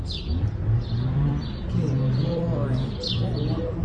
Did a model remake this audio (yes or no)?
yes